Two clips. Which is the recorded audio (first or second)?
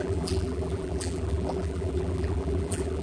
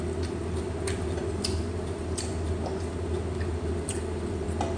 second